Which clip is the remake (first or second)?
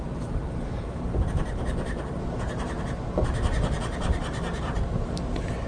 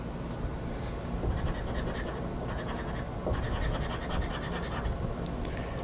first